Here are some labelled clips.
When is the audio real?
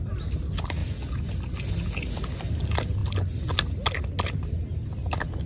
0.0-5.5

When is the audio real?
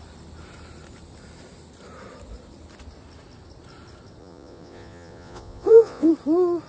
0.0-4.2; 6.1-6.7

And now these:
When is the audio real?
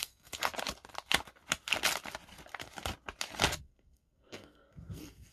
0.4-3.6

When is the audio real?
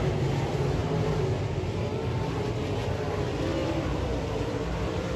0.0-3.6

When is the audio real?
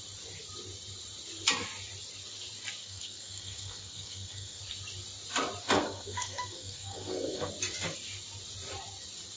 0.0-2.8; 4.6-5.6; 7.5-9.4